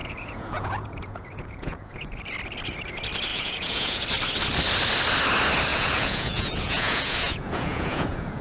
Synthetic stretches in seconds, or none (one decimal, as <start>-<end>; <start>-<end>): 0.0-2.2; 3.3-4.0; 5.7-8.4